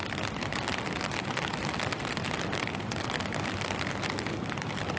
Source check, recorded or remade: recorded